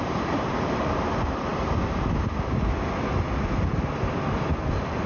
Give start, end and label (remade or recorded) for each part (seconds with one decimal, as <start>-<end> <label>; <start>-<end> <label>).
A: 0.0-1.5 remade; 1.5-4.6 recorded; 4.6-5.1 remade